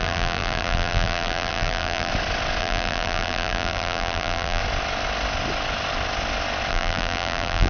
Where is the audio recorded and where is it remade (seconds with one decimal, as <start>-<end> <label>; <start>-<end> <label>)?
0.0-2.1 remade; 2.1-2.6 recorded; 2.6-4.6 remade; 4.6-6.7 recorded; 6.7-7.7 remade